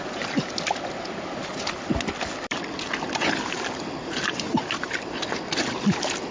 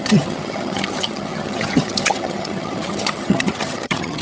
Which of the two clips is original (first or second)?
first